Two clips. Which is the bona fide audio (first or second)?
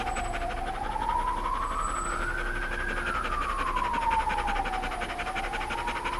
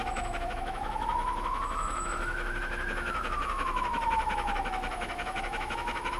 first